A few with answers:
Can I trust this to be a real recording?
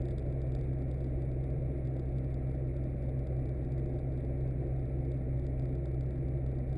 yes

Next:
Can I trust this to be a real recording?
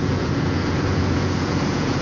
no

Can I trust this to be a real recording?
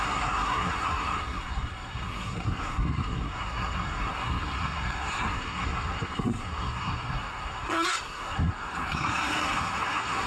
no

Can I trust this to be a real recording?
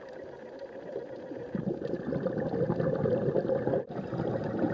yes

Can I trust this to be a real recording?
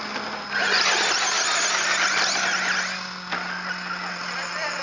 yes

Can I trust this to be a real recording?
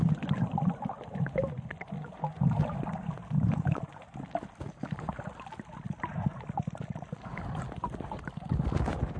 yes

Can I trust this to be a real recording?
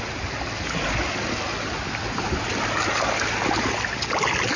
yes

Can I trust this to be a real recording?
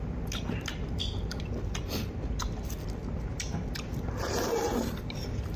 yes